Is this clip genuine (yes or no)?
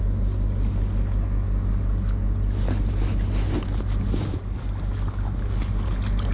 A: yes